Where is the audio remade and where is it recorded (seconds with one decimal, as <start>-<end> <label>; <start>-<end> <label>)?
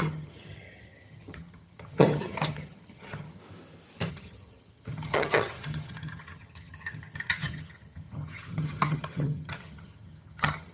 0.0-3.4 remade; 3.4-4.1 recorded; 4.1-10.7 remade